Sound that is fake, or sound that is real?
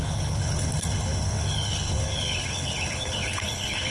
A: fake